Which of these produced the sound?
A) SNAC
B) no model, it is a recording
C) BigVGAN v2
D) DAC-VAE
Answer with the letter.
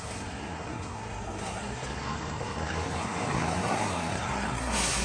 A